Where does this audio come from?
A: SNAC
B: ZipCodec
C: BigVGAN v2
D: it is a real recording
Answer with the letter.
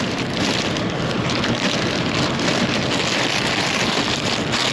C